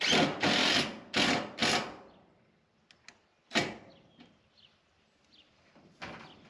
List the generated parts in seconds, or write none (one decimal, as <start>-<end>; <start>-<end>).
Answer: none